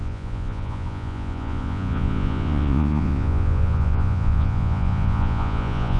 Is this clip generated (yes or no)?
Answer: yes